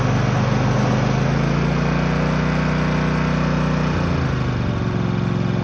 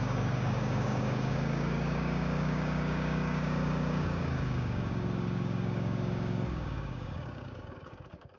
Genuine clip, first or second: first